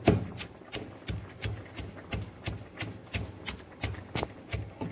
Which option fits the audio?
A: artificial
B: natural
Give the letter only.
B